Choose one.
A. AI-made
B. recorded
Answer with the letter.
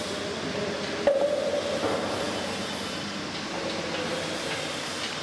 B